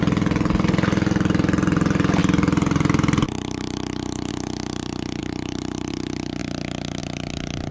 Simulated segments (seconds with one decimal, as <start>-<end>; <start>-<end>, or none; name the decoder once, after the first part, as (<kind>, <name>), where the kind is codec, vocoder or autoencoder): 2.2-4.3 (vocoder, BigVGAN v2); 5.2-5.9